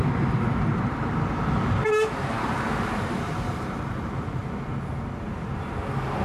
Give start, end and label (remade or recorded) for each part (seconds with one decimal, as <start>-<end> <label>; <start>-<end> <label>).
0.0-0.7 recorded; 0.7-4.4 remade; 4.4-6.2 recorded